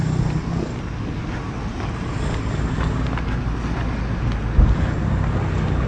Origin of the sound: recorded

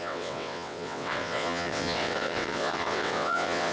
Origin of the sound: remade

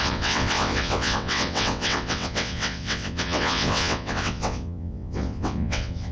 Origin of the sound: remade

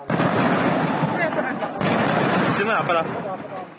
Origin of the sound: recorded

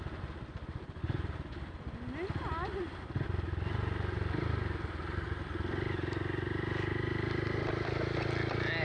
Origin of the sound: recorded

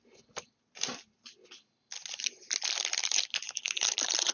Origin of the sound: recorded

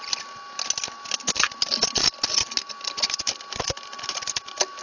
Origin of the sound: recorded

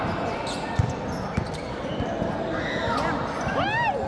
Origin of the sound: recorded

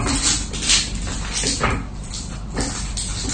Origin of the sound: recorded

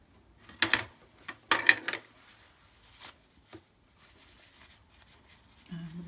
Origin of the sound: recorded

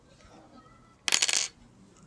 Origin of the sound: recorded